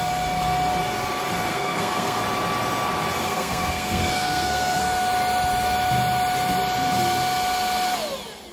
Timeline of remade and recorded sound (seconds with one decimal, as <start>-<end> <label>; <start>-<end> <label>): 0.0-1.5 recorded; 1.5-2.2 remade; 2.2-3.2 recorded; 3.2-4.8 remade; 4.8-8.5 recorded